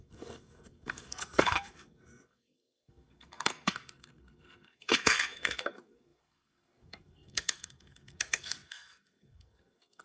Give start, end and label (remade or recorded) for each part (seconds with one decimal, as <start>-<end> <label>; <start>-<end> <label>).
0.0-10.0 remade